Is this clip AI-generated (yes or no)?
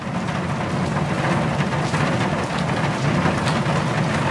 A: no